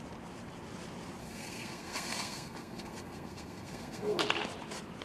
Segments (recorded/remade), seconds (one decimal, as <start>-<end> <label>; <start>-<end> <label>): 0.0-1.2 recorded; 1.2-4.2 remade; 4.2-5.0 recorded